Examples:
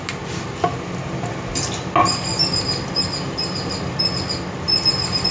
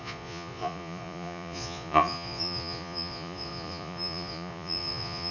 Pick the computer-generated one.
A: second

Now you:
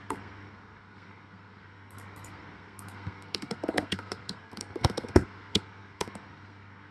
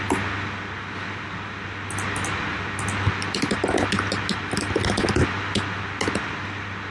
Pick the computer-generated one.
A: first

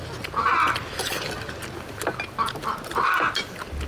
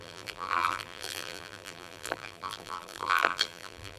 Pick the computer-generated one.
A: second